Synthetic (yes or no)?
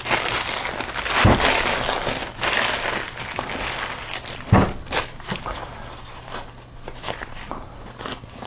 no